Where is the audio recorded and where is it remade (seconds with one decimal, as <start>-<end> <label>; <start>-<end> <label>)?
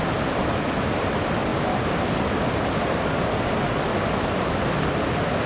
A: 0.0-5.5 recorded